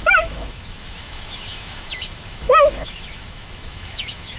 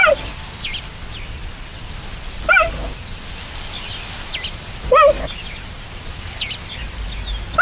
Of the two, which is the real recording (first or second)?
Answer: second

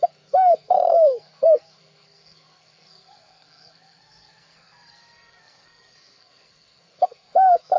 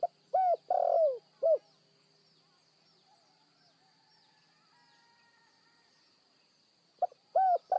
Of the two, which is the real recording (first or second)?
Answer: second